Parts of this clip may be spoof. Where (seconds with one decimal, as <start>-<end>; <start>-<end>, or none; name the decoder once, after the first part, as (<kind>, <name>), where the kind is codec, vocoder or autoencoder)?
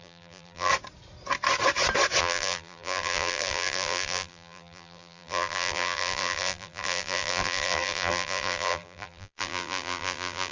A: 0.0-0.7 (vocoder, BigVGAN v2); 2.2-10.5